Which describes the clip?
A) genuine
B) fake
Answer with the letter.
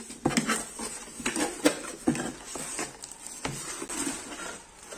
A